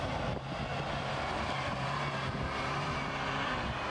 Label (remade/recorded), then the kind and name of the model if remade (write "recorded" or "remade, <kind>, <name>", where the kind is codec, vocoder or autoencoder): recorded